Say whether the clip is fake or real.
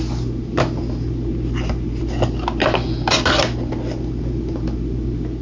real